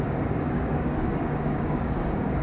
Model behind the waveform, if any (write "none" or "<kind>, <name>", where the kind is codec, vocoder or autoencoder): codec, DAC